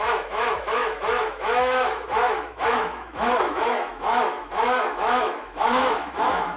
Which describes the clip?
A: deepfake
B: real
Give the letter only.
A